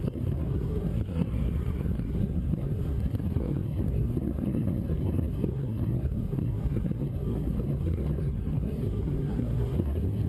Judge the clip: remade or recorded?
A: remade